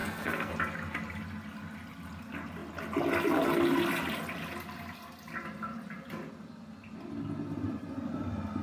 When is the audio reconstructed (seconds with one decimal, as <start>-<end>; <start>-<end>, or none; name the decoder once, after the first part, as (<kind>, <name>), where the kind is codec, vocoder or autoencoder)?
0.0-0.5 (codec, SNAC)